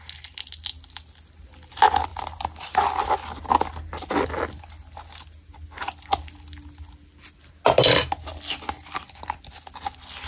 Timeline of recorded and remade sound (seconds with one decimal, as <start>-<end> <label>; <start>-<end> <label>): 0.0-10.3 recorded